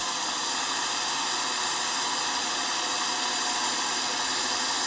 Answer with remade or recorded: recorded